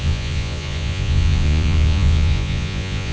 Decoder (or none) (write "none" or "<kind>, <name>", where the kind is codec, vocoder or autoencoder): vocoder, Vocos